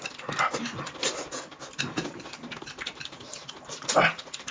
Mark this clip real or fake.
real